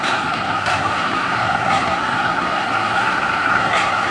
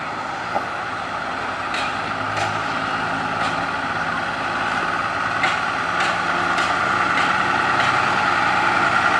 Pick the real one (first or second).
second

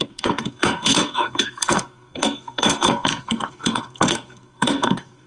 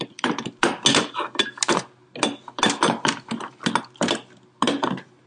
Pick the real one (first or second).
second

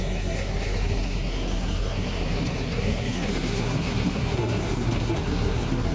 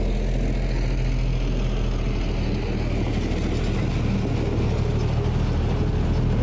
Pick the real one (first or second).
second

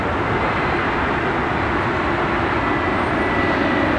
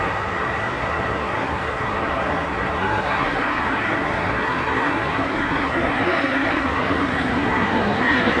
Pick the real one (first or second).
first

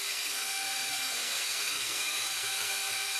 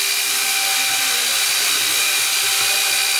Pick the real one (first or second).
second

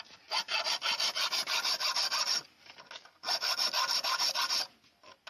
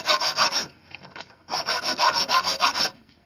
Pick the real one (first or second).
first